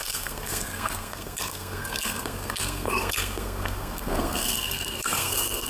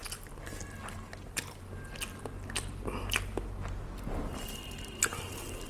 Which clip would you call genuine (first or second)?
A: second